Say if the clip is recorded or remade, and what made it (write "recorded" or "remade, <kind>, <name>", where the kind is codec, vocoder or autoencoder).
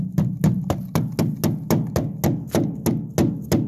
recorded